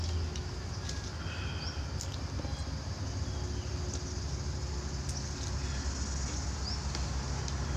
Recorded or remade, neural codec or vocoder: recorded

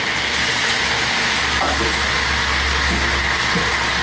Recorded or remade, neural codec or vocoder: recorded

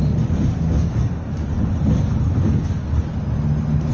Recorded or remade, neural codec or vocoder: recorded